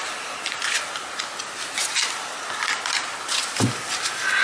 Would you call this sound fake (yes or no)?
no